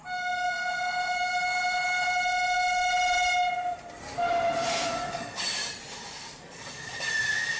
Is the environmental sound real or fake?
real